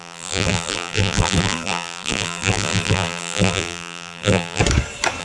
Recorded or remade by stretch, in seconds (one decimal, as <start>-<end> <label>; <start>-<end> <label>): 0.0-4.6 remade; 4.6-5.2 recorded